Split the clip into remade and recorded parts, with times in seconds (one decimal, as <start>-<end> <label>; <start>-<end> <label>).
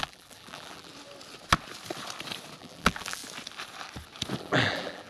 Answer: 0.0-0.9 remade; 0.9-2.6 recorded; 2.6-3.2 remade; 3.2-4.4 recorded; 4.4-5.1 remade